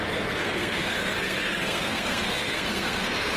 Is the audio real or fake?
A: fake